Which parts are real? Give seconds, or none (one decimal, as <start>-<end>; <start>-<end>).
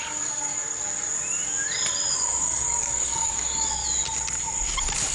0.7-2.1; 3.8-5.1